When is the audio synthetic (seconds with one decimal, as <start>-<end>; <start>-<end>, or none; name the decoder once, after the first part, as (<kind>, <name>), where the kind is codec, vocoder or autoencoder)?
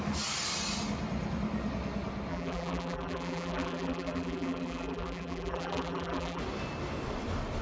2.3-6.4 (vocoder, BigVGAN v2)